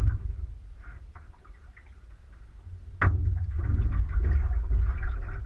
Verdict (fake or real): real